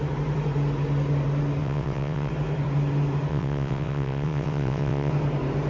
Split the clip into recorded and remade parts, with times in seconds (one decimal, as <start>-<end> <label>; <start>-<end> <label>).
0.0-1.6 recorded; 1.6-2.3 remade; 2.3-3.3 recorded; 3.3-5.1 remade; 5.1-5.7 recorded